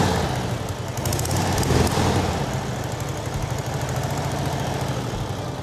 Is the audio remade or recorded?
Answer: recorded